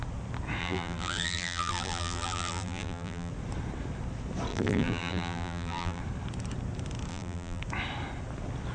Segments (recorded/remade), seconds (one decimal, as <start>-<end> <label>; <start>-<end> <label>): 0.0-0.6 recorded; 0.6-3.3 remade; 3.3-4.5 recorded; 4.5-6.0 remade; 6.0-7.1 recorded; 7.1-7.6 remade; 7.6-8.7 recorded